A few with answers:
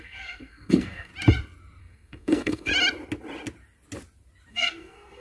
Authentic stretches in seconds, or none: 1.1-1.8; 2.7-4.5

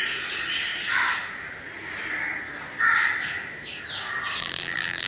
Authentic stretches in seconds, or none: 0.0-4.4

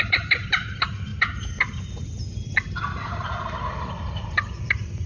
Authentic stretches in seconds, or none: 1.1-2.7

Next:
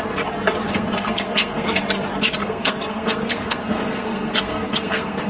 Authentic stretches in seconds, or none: 0.0-0.7; 1.8-2.4

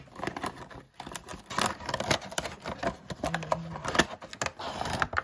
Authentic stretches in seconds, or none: 0.0-5.2

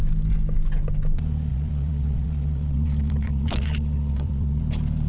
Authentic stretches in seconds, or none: 0.0-1.5; 4.6-5.1

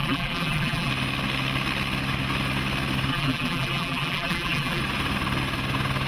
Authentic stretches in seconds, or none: 0.9-3.1; 4.8-6.1

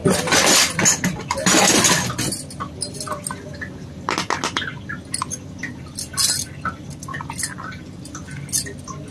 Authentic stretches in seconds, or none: 0.0-9.1